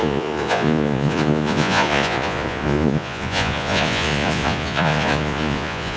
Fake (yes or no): yes